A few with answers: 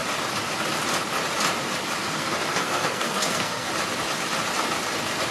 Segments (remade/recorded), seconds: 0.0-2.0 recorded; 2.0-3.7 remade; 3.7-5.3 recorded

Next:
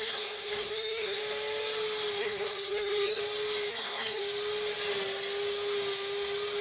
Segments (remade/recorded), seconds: 0.0-1.2 remade; 1.2-2.2 recorded; 2.2-3.2 remade; 3.2-3.7 recorded; 3.7-4.2 remade; 4.2-6.6 recorded

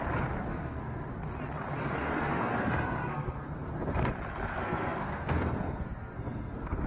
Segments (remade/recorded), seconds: 0.0-0.5 recorded; 0.5-1.1 remade; 1.1-1.8 recorded; 1.8-4.1 remade; 4.1-4.5 recorded; 4.5-6.9 remade

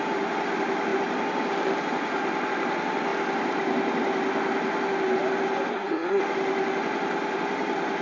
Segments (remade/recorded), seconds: 0.0-5.7 recorded; 5.7-6.2 remade; 6.2-8.0 recorded

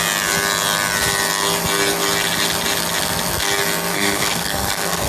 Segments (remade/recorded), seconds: 0.0-3.9 recorded; 3.9-5.1 remade

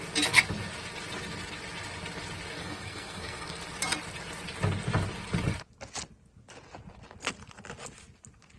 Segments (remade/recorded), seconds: 0.0-2.6 recorded; 2.6-3.6 remade; 3.6-8.6 recorded

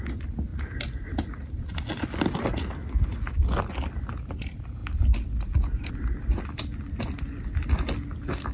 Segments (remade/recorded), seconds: 0.0-8.5 recorded